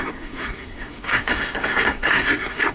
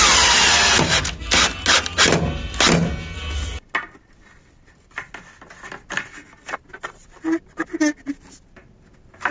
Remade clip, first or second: first